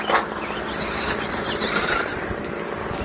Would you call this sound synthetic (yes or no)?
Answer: no